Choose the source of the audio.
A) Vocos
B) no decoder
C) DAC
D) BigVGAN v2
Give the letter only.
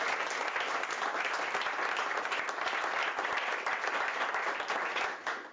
D